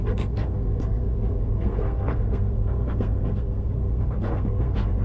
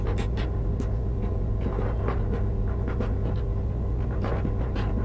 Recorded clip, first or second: second